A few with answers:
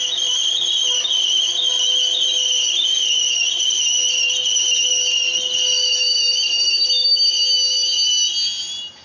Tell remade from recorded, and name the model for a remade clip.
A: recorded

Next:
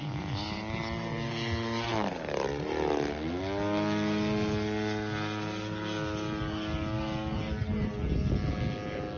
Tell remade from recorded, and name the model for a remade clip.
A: recorded